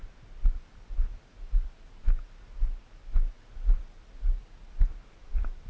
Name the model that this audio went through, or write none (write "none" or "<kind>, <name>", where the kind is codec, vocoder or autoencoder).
none